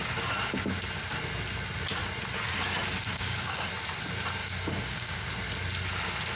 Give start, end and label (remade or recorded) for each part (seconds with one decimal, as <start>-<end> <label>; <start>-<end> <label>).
0.0-3.1 recorded; 3.1-3.7 remade; 3.7-4.4 recorded; 4.4-5.3 remade; 5.3-6.4 recorded